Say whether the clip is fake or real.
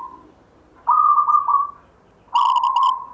real